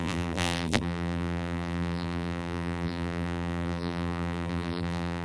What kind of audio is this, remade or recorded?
remade